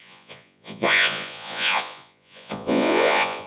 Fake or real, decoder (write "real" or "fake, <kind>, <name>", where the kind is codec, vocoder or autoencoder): fake, vocoder, Vocos